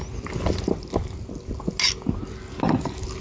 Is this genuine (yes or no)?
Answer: yes